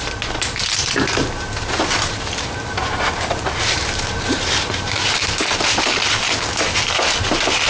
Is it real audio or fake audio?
real